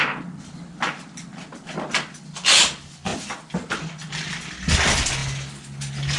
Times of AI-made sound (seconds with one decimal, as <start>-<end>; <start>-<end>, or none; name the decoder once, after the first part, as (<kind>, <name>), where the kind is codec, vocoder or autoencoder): none